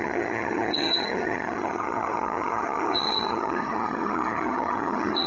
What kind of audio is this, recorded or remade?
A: remade